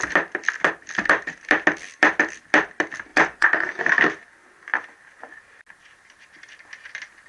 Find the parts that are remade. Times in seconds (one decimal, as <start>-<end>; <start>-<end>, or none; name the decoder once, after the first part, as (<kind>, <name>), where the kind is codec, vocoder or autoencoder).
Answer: 3.1-3.7 (vocoder, Vocos)